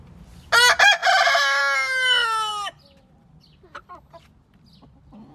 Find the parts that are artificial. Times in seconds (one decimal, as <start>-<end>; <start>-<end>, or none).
none